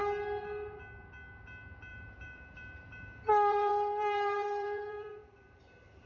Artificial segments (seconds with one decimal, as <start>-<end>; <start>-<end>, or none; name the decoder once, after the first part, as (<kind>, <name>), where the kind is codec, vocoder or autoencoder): 1.9-5.6 (vocoder, BigVGAN v2)